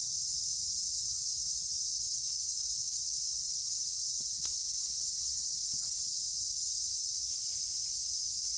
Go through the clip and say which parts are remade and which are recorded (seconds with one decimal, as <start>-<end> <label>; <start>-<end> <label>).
0.0-0.9 recorded; 0.9-6.0 remade; 6.0-8.6 recorded